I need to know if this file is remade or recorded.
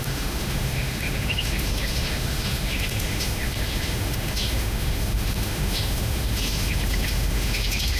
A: remade